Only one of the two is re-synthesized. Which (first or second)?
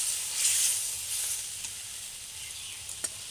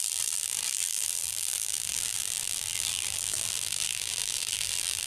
second